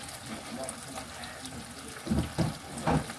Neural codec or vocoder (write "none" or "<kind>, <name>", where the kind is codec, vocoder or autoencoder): none